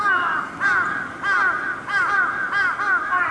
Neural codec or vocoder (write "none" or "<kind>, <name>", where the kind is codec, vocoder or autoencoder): none